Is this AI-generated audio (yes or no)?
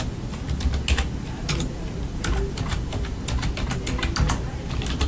no